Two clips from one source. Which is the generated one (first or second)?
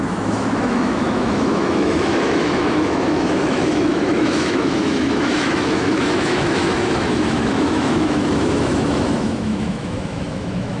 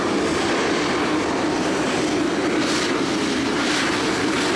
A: first